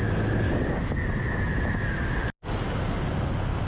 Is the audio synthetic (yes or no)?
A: no